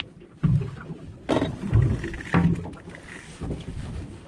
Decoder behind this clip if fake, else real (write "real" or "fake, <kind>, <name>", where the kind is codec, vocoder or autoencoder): real